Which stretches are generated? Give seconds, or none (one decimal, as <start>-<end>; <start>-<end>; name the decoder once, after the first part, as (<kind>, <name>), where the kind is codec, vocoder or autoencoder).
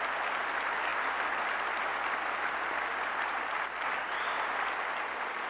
none